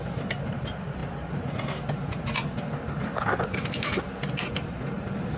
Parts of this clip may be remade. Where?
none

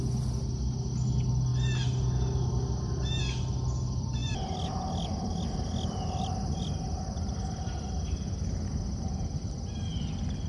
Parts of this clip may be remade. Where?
none